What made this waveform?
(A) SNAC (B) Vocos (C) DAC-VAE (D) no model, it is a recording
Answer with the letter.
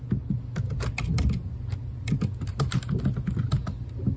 D